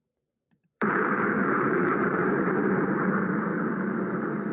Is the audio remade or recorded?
remade